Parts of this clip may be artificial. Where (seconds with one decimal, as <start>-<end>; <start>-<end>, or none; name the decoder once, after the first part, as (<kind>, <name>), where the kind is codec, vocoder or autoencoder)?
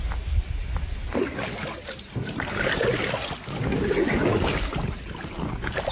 none